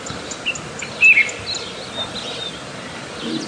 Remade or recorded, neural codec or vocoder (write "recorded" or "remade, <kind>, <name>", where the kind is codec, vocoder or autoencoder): recorded